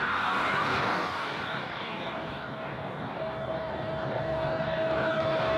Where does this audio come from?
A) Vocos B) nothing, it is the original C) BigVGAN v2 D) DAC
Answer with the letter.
D